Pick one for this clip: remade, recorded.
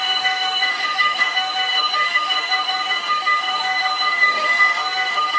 remade